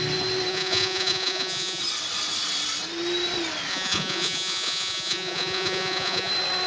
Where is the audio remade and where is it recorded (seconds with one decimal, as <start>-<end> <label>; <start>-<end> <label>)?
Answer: 0.0-0.5 recorded; 0.5-1.8 remade; 1.8-3.7 recorded; 3.7-6.3 remade; 6.3-6.7 recorded

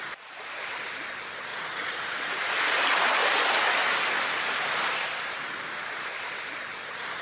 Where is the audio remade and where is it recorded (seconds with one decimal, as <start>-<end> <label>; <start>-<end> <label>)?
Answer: 0.0-1.5 recorded; 1.5-2.5 remade; 2.5-7.2 recorded

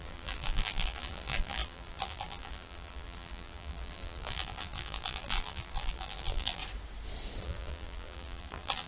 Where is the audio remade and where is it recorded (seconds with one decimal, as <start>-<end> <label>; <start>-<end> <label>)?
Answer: 0.0-6.6 remade; 6.6-7.4 recorded; 7.4-8.9 remade

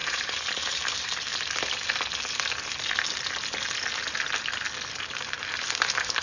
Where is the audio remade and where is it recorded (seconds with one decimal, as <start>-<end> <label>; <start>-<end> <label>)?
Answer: 0.0-1.3 remade; 1.3-5.0 recorded; 5.0-6.2 remade